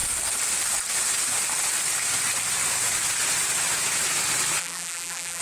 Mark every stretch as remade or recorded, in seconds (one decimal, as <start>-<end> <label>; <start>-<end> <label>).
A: 0.0-4.6 recorded; 4.6-5.4 remade